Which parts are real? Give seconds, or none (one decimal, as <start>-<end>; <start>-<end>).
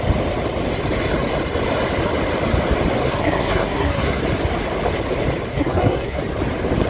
0.0-3.0; 4.2-5.5; 6.2-6.9